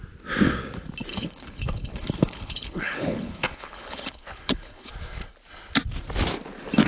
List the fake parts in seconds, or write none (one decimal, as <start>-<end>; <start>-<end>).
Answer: 1.1-4.9